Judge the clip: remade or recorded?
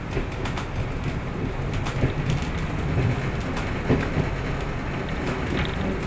recorded